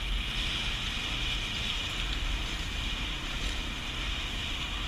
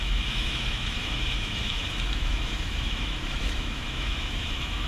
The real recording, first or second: first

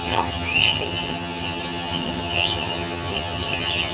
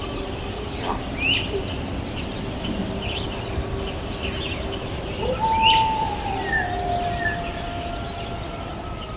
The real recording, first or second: second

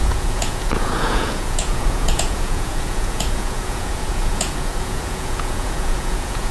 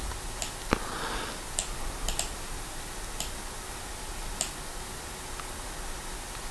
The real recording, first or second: second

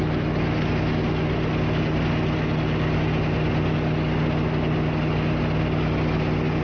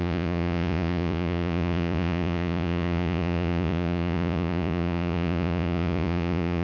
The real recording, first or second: first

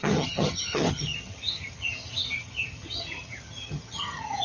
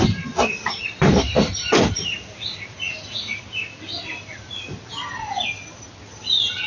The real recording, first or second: second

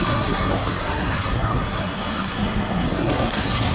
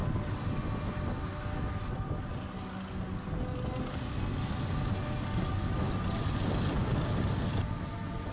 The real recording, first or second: second